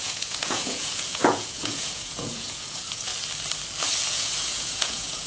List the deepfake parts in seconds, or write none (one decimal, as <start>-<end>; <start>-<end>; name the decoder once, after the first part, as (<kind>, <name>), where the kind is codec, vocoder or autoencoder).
0.0-3.1 (vocoder, Vocos); 4.1-5.3

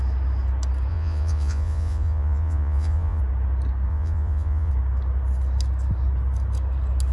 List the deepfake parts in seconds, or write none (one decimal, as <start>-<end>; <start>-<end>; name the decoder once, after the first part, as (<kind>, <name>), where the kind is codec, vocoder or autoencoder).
0.9-3.2 (vocoder, Vocos); 3.9-4.7

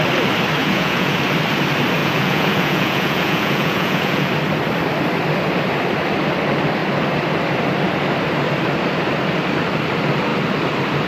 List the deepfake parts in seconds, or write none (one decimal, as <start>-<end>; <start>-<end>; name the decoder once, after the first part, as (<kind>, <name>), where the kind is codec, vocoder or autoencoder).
0.6-1.2 (vocoder, Vocos); 2.0-4.3

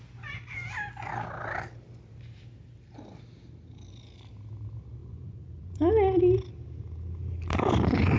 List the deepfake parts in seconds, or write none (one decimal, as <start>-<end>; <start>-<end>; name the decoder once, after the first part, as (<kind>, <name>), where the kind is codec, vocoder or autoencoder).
5.0-5.9 (vocoder, Vocos)

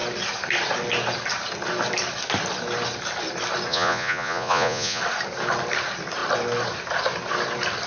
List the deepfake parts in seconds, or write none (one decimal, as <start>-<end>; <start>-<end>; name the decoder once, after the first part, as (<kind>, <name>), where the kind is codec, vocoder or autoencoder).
3.7-5.0 (vocoder, Vocos)

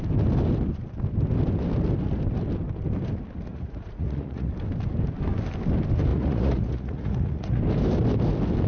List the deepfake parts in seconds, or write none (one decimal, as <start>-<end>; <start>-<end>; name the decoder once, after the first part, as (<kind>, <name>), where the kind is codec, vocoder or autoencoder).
3.5-4.5 (vocoder, Vocos); 6.1-7.6

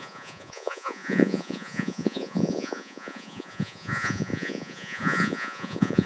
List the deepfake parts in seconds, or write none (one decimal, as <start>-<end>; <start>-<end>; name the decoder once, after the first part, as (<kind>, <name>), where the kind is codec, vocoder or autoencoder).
0.0-6.1 (vocoder, Vocos)